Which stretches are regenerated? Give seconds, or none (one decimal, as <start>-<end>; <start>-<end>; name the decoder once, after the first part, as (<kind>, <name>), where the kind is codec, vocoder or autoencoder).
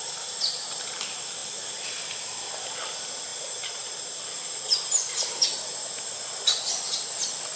none